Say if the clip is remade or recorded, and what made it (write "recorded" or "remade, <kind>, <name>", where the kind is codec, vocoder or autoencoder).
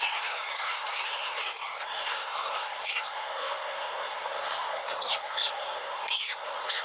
remade, codec, SNAC